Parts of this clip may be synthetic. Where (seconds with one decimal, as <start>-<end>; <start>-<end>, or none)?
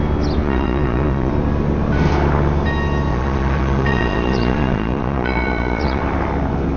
0.4-1.3; 3.1-6.0